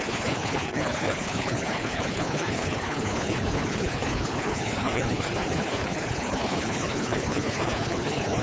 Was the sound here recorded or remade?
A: remade